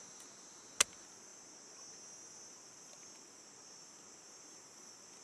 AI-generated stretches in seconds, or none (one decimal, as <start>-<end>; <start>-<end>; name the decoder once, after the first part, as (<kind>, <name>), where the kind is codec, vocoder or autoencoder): none